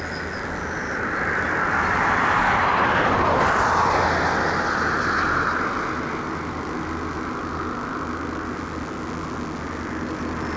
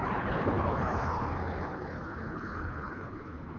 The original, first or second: first